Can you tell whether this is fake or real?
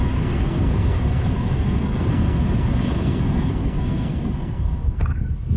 fake